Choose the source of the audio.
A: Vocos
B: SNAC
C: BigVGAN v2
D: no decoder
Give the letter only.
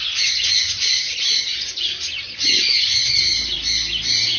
D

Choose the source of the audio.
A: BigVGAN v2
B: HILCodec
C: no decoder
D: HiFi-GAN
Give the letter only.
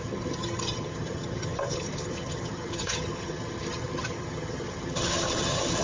D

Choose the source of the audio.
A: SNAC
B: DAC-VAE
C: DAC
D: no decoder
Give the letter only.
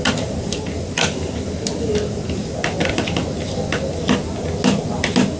D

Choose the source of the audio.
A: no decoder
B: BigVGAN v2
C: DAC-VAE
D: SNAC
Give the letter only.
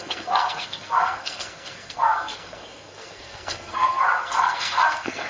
D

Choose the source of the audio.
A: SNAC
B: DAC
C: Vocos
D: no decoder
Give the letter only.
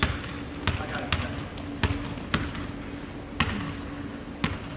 D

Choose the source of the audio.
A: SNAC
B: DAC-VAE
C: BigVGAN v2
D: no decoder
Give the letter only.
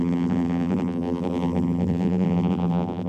C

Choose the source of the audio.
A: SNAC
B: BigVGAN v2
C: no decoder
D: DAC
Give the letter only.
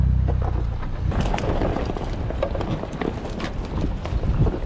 C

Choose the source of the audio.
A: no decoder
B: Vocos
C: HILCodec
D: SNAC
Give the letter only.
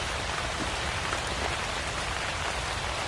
A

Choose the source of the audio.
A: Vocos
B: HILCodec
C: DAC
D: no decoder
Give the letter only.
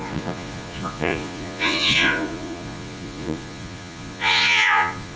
A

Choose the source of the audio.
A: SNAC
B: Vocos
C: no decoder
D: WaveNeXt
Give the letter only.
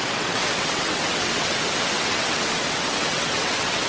D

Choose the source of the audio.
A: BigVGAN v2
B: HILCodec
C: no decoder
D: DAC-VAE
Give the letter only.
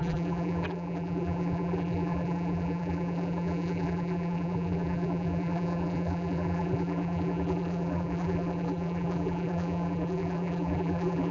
A